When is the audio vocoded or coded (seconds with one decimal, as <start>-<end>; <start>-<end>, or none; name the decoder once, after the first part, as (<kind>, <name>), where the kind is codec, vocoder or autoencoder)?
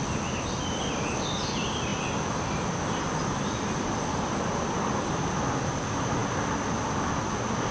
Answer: none